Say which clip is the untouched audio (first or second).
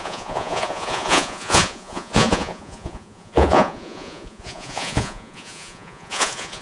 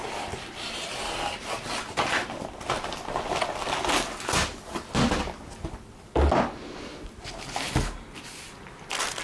second